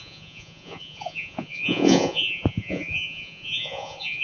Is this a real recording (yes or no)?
no